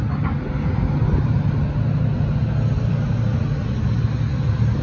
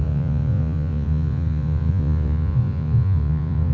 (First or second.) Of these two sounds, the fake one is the second